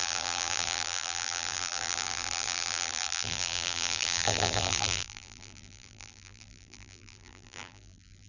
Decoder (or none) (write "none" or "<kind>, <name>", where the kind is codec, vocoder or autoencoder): vocoder, BigVGAN v2